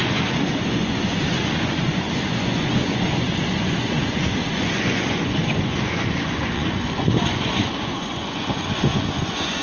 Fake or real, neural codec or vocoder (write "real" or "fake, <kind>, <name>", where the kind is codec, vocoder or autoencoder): fake, vocoder, Vocos